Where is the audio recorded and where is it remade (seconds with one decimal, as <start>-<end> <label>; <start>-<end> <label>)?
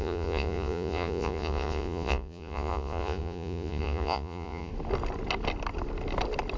0.0-4.7 remade; 4.7-6.6 recorded